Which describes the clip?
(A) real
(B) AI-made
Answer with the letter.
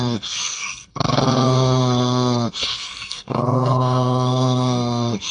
B